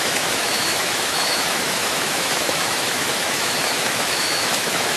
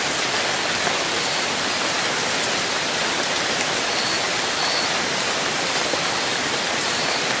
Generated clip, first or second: first